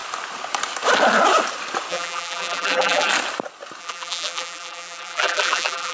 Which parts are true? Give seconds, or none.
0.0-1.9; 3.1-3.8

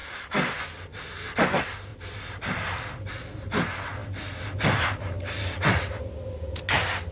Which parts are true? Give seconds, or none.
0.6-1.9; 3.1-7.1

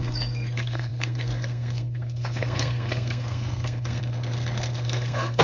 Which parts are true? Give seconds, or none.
none